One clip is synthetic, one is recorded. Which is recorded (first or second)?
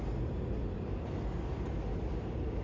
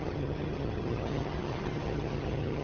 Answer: first